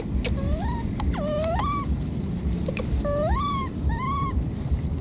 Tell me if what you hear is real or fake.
real